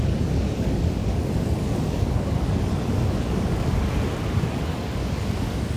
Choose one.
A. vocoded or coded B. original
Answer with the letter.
A